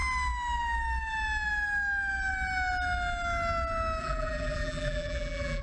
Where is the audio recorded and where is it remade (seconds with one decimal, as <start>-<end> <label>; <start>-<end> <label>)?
0.0-4.0 recorded; 4.0-5.6 remade